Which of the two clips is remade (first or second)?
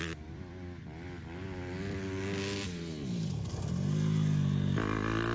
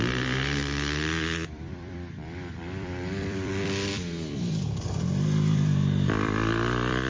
second